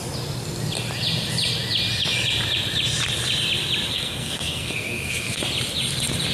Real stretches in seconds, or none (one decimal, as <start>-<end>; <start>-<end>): 0.0-3.9; 5.4-6.3